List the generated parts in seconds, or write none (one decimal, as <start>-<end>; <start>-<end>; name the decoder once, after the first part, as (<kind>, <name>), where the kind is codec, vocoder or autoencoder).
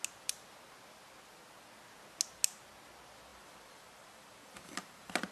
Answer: 3.3-5.3 (vocoder, BigVGAN v2)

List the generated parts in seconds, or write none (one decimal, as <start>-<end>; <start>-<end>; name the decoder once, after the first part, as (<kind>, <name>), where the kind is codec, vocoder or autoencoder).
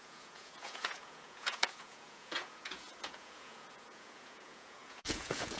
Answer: 0.0-5.6 (vocoder, Vocos)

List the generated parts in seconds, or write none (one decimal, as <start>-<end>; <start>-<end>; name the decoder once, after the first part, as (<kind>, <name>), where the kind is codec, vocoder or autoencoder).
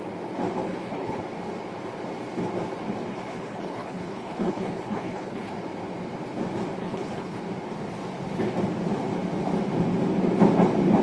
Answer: 0.6-1.2 (codec, HILCodec); 3.1-5.5; 6.8-7.4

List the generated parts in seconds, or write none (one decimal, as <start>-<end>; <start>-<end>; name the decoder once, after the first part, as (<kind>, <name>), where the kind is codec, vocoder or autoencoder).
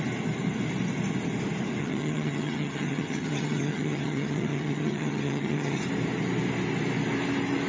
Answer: 1.8-5.8 (vocoder, HiFi-GAN)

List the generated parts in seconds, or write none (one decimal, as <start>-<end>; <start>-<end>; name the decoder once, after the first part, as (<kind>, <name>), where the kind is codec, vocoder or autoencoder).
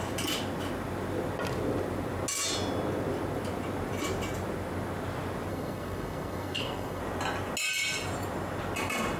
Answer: 5.5-7.0 (codec, SNAC)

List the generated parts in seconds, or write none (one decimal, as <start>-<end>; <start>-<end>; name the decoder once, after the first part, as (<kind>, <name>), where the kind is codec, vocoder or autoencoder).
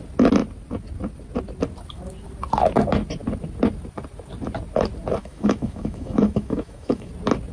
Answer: 5.2-7.1 (autoencoder, DAC-VAE)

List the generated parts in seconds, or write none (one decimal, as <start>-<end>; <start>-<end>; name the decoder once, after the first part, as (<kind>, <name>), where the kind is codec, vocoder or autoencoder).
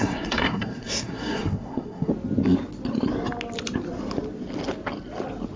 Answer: 0.0-2.1 (codec, SNAC)